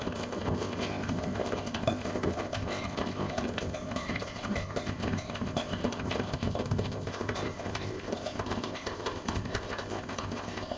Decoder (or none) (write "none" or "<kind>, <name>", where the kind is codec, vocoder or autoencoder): codec, ZipCodec